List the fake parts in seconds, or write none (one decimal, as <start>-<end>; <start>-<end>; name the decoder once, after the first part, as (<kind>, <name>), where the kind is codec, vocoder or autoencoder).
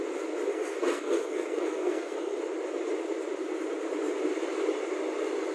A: 0.5-2.4 (codec, SNAC)